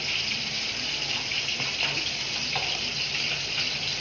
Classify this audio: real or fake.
real